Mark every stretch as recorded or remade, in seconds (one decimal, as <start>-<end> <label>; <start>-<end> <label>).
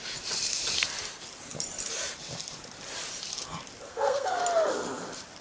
0.0-3.9 recorded; 3.9-4.4 remade; 4.4-5.4 recorded